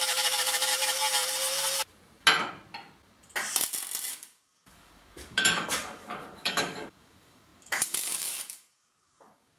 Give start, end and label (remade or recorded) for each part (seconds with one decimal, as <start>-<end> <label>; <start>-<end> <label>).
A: 0.0-0.7 remade; 0.7-4.1 recorded; 4.1-9.6 remade